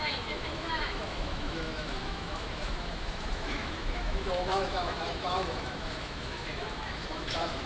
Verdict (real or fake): fake